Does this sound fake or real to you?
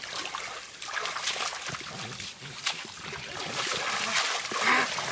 real